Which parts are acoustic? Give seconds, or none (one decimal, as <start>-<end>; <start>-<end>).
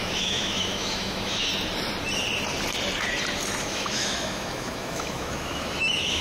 1.5-3.6